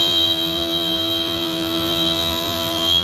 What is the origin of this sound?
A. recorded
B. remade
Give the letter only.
B